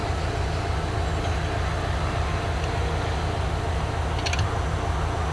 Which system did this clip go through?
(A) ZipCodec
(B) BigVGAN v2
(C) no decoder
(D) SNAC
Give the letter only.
C